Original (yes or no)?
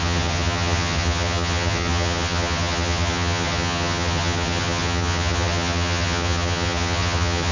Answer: no